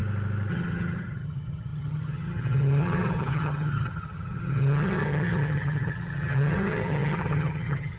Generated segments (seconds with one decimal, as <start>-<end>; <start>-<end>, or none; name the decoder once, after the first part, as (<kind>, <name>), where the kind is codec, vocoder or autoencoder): 0.5-8.0 (vocoder, HiFi-GAN)